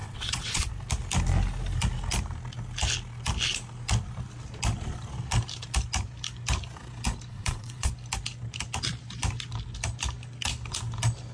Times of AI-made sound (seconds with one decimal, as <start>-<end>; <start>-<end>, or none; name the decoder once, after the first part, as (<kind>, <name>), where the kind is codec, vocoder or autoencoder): 0.0-0.7 (vocoder, WaveNeXt); 7.3-7.9